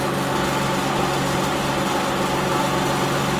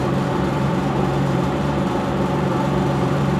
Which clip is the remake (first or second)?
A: second